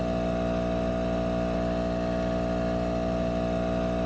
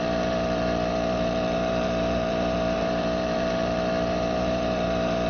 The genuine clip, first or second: first